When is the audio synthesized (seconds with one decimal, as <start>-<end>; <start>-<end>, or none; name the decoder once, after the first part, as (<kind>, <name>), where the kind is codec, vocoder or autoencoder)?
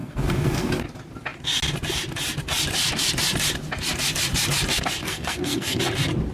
0.0-0.7 (codec, SNAC); 5.0-5.8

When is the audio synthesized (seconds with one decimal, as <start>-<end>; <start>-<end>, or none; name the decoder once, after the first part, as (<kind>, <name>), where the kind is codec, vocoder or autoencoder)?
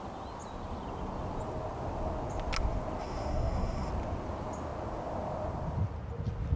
3.0-3.9 (codec, SNAC)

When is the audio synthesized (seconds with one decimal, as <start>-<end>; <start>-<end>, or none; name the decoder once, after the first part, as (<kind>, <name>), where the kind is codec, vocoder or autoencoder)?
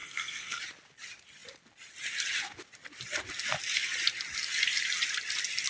0.0-0.6 (codec, SNAC)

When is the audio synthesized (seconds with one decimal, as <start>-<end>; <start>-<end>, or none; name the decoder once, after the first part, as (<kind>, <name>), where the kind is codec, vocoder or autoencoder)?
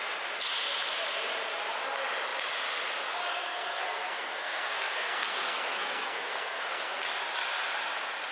3.3-7.0 (codec, SNAC)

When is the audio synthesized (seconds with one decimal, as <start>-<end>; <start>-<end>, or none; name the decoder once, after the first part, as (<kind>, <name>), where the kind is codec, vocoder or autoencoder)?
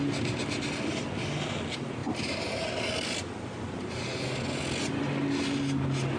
none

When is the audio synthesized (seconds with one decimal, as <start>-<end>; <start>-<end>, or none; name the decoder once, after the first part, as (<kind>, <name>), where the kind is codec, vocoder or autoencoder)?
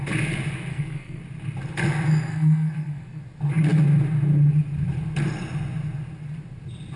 0.7-1.2 (codec, SNAC); 2.3-3.2